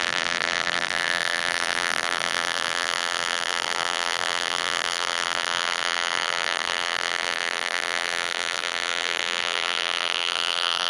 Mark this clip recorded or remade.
remade